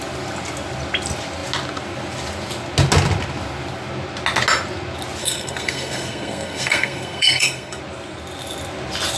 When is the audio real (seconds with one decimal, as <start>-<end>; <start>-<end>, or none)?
0.0-5.2; 7.8-9.2